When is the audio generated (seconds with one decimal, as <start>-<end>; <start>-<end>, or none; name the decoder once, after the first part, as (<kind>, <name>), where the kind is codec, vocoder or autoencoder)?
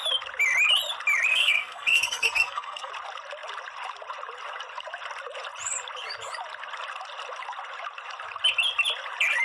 1.3-2.9 (codec, SNAC)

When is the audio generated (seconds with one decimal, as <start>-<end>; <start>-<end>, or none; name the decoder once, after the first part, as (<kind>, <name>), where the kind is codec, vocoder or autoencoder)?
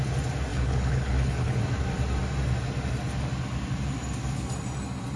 0.5-1.6 (codec, HILCodec)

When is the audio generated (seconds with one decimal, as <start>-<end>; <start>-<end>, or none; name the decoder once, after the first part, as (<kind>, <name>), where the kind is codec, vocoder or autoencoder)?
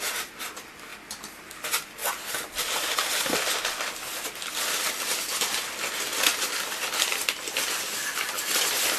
0.0-0.9 (vocoder, BigVGAN v2); 1.6-2.0; 6.5-9.0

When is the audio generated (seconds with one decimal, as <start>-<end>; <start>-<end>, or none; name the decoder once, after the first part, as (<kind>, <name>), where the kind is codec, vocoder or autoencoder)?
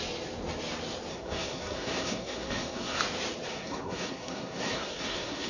1.1-3.0 (codec, SNAC); 3.5-5.5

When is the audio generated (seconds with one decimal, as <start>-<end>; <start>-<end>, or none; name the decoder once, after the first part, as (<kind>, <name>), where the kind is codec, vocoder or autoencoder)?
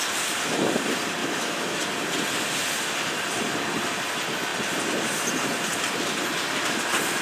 1.2-1.8 (autoencoder, DAC-VAE)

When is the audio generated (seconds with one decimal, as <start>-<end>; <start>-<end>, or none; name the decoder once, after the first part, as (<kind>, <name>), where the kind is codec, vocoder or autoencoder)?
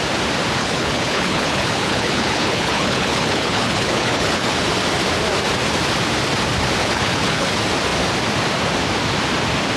0.6-4.5 (codec, HILCodec); 6.8-7.5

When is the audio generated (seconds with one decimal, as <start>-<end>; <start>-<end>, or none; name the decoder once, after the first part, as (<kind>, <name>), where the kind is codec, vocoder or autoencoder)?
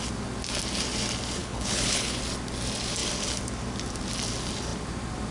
1.4-2.2 (codec, HILCodec)